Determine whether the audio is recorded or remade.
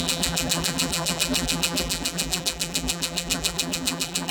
remade